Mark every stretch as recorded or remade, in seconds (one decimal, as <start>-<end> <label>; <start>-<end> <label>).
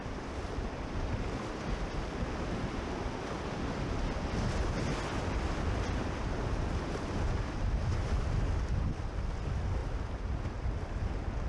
0.0-11.5 recorded